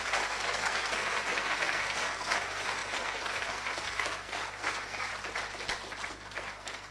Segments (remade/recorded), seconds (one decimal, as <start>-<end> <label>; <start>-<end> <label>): 0.0-5.1 remade; 5.1-6.1 recorded; 6.1-6.9 remade